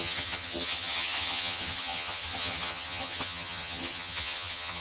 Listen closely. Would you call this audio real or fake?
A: fake